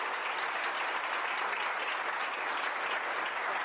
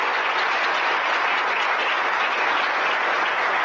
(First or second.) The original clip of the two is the first